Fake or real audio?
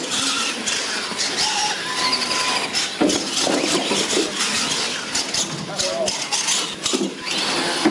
real